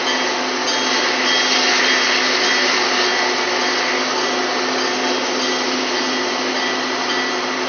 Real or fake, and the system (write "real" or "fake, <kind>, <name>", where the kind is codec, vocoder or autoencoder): real